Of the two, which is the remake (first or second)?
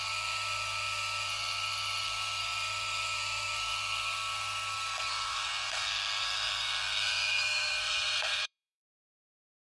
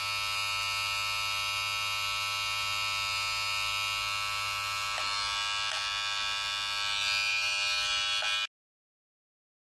first